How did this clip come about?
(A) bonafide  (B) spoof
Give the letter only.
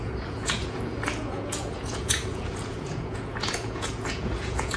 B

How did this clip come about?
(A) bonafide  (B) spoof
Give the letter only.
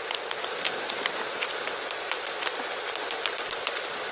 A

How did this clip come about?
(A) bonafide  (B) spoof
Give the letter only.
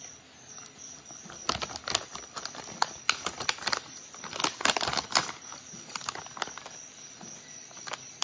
A